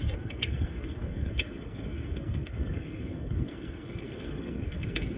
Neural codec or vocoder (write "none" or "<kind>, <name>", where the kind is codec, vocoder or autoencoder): codec, SNAC